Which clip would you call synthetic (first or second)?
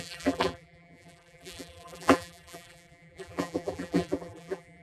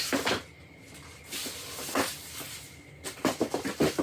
first